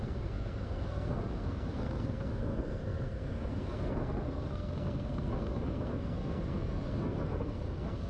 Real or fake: fake